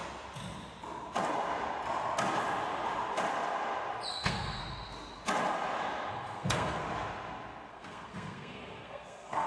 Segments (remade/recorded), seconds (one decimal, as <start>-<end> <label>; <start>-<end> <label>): 0.0-4.1 recorded; 4.1-4.6 remade; 4.6-6.1 recorded; 6.1-6.8 remade; 6.8-7.7 recorded; 7.7-9.5 remade